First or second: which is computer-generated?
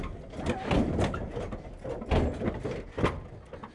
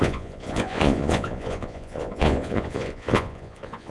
second